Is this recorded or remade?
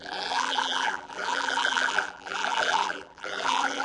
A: remade